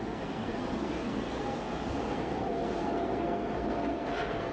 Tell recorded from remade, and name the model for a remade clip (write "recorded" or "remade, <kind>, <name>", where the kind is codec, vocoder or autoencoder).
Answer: remade, codec, SNAC